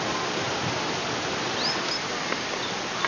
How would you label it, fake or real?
real